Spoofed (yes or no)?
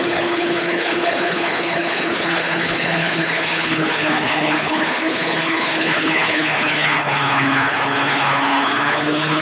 yes